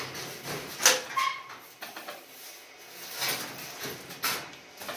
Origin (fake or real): real